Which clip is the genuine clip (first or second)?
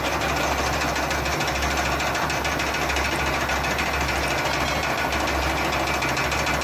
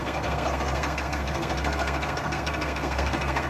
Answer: first